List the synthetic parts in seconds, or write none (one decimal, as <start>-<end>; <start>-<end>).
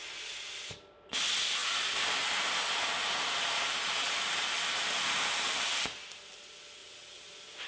6.8-7.3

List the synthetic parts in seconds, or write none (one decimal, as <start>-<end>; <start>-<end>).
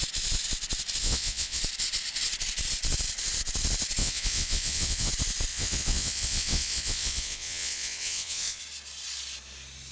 1.0-1.6; 4.0-5.1; 5.5-8.6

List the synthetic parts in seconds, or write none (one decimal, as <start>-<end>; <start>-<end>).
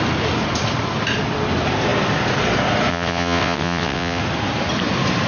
2.9-4.2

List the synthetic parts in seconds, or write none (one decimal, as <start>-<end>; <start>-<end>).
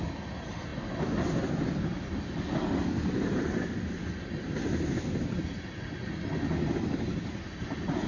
none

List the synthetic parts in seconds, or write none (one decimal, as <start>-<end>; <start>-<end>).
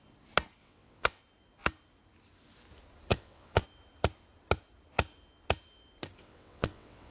0.6-1.2; 3.1-3.6; 6.2-7.1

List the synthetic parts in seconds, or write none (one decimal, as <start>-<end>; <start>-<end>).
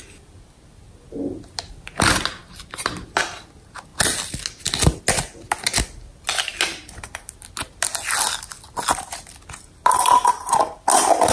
none